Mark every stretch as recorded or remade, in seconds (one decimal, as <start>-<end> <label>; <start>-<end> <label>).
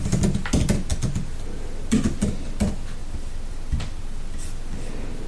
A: 0.0-5.3 recorded